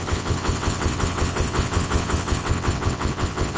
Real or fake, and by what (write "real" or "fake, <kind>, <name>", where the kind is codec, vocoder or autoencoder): fake, vocoder, WaveNeXt